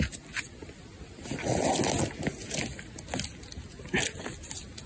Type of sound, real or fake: real